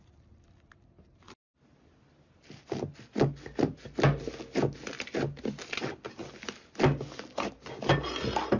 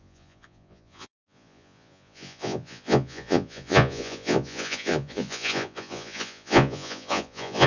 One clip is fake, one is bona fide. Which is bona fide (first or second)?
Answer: first